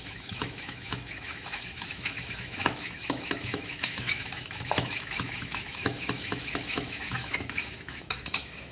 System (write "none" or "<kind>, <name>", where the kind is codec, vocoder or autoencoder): autoencoder, DAC-VAE